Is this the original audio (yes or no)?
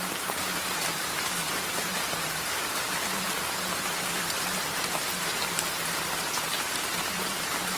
no